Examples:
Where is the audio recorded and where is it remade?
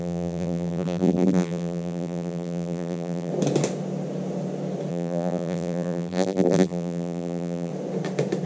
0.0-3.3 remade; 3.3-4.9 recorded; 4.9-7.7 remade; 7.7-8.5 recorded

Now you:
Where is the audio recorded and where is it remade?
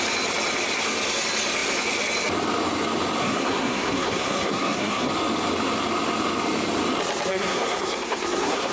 0.0-3.2 recorded; 3.2-5.1 remade; 5.1-7.3 recorded; 7.3-8.7 remade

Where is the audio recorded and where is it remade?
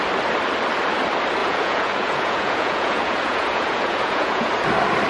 0.0-1.4 recorded; 1.4-4.5 remade; 4.5-5.1 recorded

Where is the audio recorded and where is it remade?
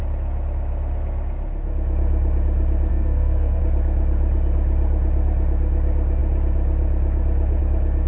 0.0-2.9 recorded; 2.9-3.6 remade; 3.6-8.1 recorded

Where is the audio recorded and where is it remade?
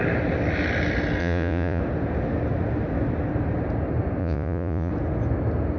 0.0-1.2 recorded; 1.2-1.8 remade; 1.8-4.2 recorded; 4.2-4.9 remade; 4.9-5.8 recorded